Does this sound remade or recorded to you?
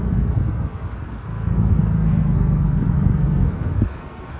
remade